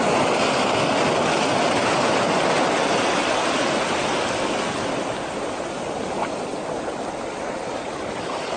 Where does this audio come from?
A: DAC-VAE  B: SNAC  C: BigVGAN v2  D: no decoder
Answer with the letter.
D